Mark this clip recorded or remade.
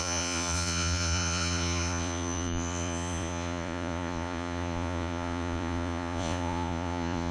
remade